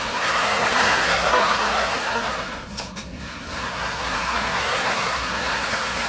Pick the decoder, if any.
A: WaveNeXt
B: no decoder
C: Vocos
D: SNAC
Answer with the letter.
D